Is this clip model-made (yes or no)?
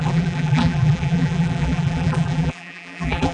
yes